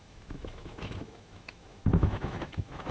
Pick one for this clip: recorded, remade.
remade